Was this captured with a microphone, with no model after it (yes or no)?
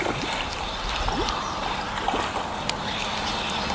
yes